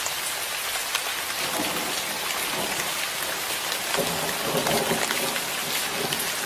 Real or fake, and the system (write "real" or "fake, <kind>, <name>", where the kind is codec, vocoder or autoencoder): real